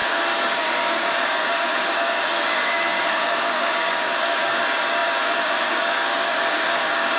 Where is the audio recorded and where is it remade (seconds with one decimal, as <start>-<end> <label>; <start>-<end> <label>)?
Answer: 0.0-7.2 remade